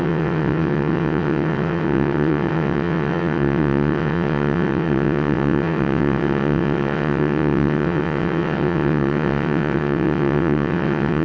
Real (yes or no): no